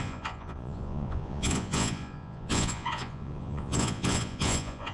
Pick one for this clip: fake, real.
fake